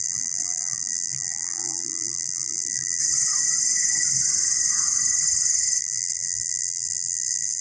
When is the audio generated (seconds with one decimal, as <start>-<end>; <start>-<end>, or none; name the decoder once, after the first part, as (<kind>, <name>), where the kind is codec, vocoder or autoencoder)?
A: 0.0-3.0 (vocoder, BigVGAN v2); 5.8-7.6